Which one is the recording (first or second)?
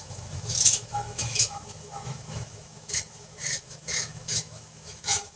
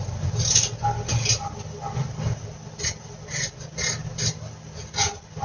second